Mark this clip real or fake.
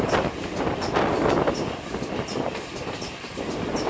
real